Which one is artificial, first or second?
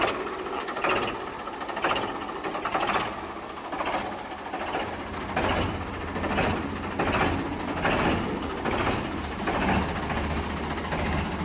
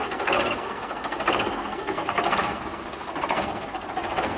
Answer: second